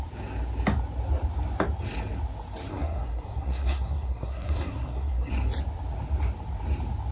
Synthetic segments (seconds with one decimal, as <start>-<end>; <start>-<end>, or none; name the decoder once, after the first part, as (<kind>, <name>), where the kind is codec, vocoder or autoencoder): 2.7-5.3 (codec, SNAC)